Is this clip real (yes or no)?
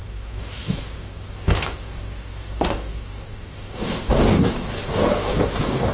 no